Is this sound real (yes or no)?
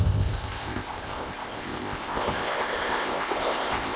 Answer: no